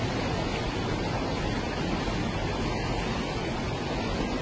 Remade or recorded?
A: recorded